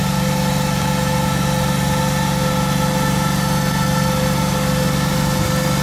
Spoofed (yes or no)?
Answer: no